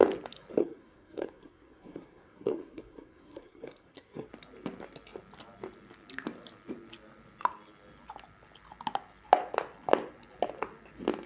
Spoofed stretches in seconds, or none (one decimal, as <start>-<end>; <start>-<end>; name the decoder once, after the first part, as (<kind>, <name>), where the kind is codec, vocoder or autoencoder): 0.6-4.3 (codec, SNAC)

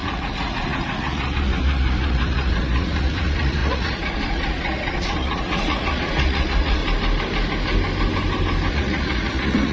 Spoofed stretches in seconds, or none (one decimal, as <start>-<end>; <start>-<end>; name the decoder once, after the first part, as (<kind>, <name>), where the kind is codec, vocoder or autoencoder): 0.0-6.8 (vocoder, Vocos); 8.7-9.7

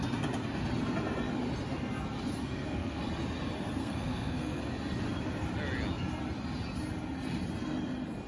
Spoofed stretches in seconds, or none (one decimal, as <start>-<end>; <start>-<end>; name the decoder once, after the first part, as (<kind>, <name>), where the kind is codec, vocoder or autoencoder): 2.4-3.0 (codec, SNAC); 3.8-4.6

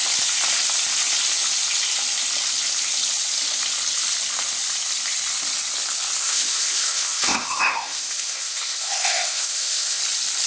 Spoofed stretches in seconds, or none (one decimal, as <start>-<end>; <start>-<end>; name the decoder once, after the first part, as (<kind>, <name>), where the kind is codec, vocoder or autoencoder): 6.2-10.0 (codec, ZipCodec)